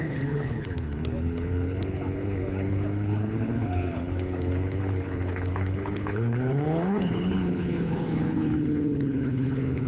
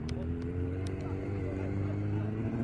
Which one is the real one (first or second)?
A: second